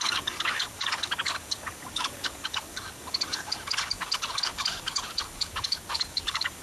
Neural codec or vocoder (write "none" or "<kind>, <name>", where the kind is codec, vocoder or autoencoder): codec, DAC